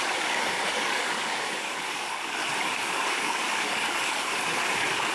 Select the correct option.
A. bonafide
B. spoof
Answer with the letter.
B